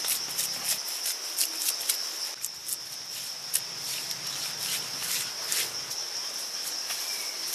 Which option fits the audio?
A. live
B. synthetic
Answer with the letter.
A